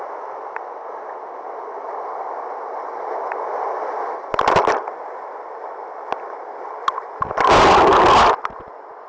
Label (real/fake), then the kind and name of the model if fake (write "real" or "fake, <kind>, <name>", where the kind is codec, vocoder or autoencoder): real